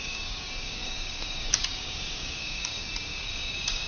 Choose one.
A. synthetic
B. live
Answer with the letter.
A